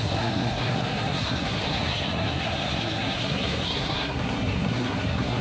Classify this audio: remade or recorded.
remade